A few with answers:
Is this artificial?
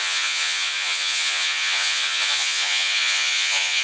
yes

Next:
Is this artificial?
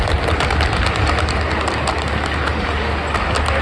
no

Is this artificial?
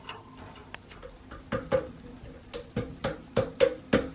no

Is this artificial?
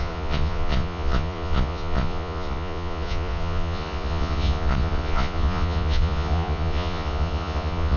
yes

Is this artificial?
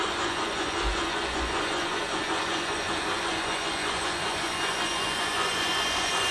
yes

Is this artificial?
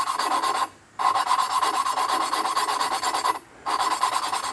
no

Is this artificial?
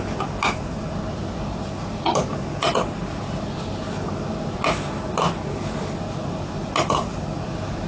no